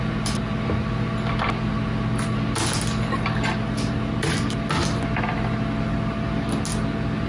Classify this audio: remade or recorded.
recorded